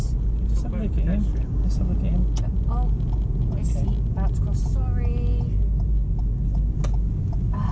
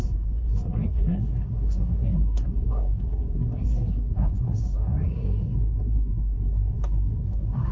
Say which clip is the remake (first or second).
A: second